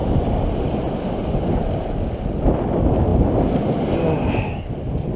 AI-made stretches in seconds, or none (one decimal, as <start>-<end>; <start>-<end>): none